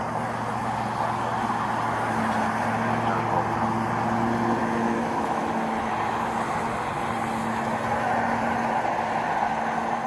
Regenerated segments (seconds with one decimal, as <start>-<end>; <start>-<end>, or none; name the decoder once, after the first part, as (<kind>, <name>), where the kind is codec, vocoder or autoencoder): 4.6-5.9 (autoencoder, DAC-VAE)

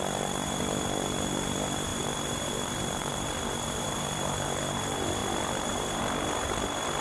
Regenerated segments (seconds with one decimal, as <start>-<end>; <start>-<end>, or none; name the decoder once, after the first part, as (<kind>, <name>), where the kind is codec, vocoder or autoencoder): 0.0-7.0 (vocoder, BigVGAN v2)

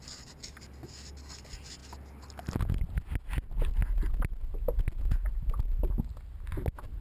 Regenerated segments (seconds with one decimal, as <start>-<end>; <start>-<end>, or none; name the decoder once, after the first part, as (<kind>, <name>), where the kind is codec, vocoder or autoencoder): none